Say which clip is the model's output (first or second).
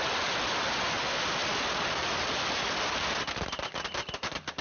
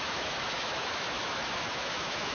second